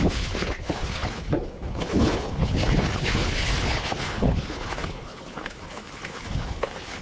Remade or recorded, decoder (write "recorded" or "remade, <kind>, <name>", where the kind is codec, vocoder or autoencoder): remade, codec, HILCodec